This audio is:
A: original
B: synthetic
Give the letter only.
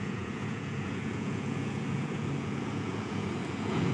B